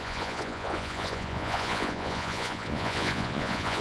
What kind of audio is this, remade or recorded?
remade